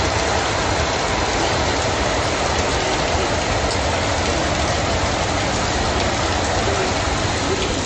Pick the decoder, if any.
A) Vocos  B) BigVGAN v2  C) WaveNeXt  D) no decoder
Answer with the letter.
D